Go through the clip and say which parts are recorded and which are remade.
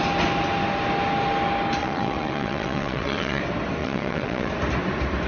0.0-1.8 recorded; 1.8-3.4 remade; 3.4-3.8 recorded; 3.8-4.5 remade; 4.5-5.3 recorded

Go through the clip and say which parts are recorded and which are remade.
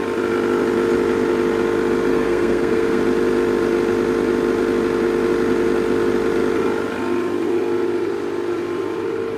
0.0-2.1 recorded; 2.1-3.0 remade; 3.0-9.4 recorded